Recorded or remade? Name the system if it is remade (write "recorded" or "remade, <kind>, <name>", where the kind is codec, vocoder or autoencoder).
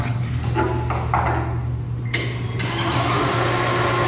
recorded